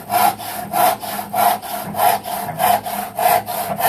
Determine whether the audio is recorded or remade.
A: recorded